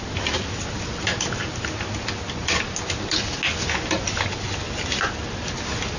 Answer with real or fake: real